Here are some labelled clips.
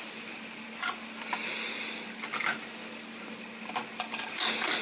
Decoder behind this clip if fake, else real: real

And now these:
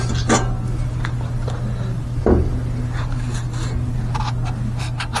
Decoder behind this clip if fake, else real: real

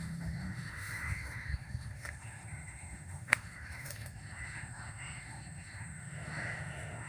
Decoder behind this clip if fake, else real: fake, autoencoder, DAC-VAE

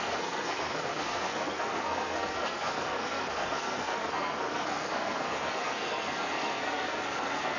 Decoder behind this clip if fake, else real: fake, codec, SNAC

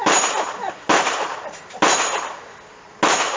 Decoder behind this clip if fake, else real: real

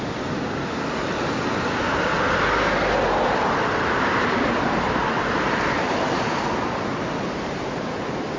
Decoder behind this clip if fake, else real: real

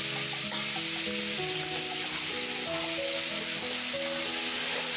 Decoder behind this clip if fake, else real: real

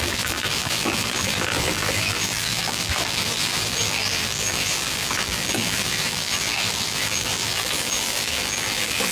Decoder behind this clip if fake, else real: fake, vocoder, BigVGAN v2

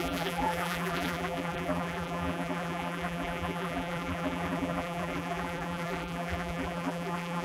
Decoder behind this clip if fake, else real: fake, vocoder, BigVGAN v2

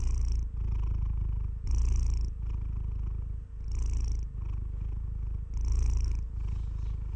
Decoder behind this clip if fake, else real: real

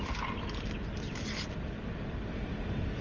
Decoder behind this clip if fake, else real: real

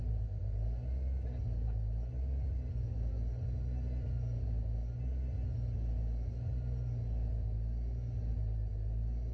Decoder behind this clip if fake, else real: real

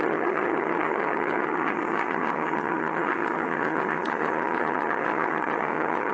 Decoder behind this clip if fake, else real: fake, vocoder, HiFi-GAN